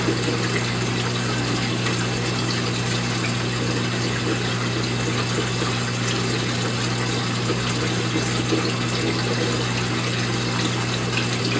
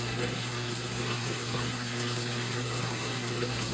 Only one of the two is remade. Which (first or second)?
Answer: second